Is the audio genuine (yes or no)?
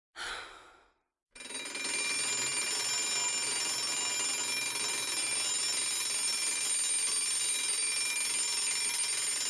yes